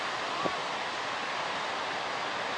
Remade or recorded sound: recorded